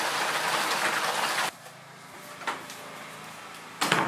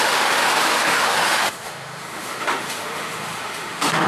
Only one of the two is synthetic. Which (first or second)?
second